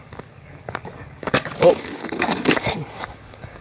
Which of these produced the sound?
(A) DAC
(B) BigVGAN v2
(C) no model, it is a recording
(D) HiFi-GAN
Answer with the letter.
A